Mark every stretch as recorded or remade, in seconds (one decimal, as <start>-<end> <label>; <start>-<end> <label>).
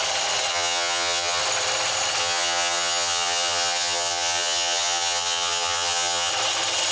0.0-0.5 recorded; 0.5-1.4 remade; 1.4-2.2 recorded; 2.2-6.3 remade; 6.3-6.9 recorded